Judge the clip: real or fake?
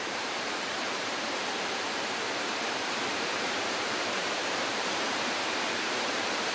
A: fake